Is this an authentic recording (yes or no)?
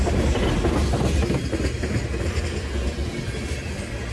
yes